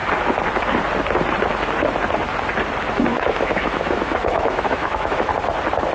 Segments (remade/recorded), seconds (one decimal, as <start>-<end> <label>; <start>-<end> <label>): 0.0-3.1 recorded; 3.1-5.3 remade; 5.3-5.9 recorded